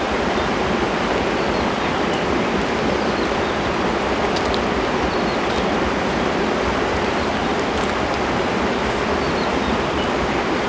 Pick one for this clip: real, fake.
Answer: real